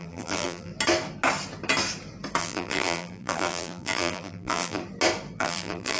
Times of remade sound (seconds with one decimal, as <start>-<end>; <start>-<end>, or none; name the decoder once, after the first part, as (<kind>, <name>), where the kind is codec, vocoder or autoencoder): 0.0-0.7 (vocoder, BigVGAN v2); 2.4-4.8; 5.4-6.0